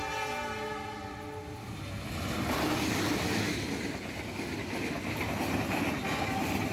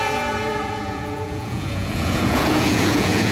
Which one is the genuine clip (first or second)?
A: first